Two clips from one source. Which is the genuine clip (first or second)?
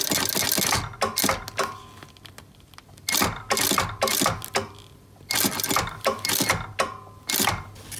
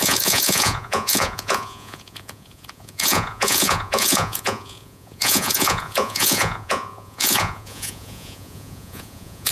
first